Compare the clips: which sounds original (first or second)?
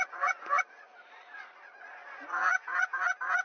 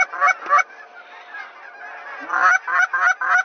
second